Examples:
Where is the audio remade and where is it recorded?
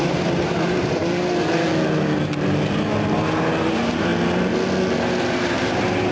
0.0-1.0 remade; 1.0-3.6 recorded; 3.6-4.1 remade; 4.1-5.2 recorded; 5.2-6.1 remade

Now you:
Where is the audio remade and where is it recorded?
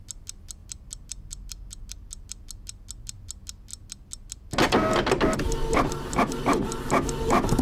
0.0-7.6 recorded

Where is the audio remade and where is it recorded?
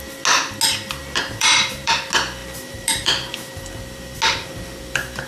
0.0-1.0 recorded; 1.0-1.9 remade; 1.9-2.4 recorded; 2.4-3.6 remade; 3.6-5.3 recorded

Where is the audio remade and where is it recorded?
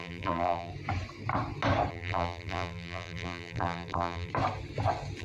0.0-0.7 remade; 0.7-1.9 recorded; 1.9-4.3 remade; 4.3-5.2 recorded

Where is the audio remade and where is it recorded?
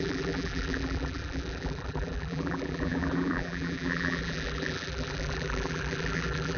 0.0-6.6 remade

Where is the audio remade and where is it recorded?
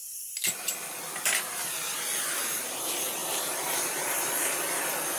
0.0-0.7 remade; 0.7-3.2 recorded; 3.2-4.3 remade; 4.3-5.2 recorded